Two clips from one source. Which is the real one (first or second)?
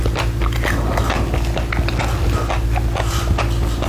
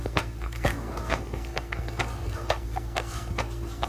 first